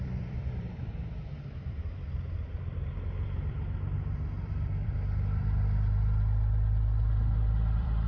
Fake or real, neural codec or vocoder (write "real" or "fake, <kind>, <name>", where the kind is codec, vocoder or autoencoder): fake, vocoder, BigVGAN v2